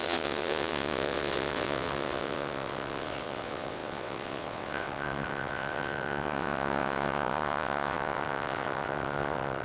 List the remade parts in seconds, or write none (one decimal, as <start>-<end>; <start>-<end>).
0.0-9.6